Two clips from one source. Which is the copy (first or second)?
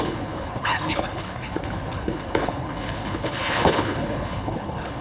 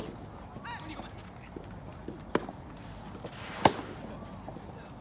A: first